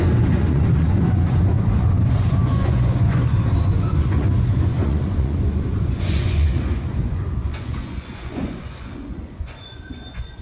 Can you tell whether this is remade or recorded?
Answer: remade